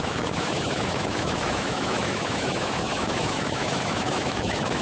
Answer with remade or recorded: remade